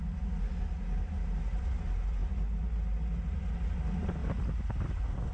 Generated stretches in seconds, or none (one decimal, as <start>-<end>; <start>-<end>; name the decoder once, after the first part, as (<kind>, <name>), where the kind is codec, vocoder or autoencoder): none